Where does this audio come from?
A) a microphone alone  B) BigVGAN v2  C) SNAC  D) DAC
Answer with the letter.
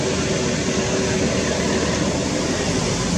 A